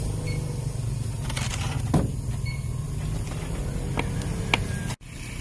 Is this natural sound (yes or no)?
yes